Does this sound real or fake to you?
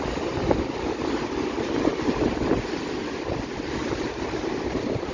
real